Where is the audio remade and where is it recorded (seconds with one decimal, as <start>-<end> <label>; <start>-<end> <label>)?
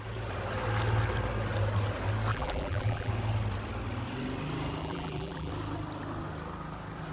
0.0-2.3 recorded; 2.3-3.1 remade; 3.1-4.8 recorded; 4.8-5.5 remade; 5.5-7.1 recorded